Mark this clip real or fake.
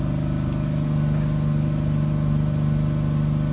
real